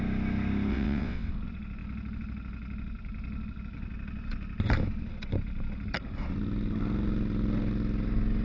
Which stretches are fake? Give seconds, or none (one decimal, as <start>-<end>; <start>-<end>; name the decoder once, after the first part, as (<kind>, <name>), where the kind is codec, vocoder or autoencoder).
0.7-1.3 (vocoder, WaveNeXt)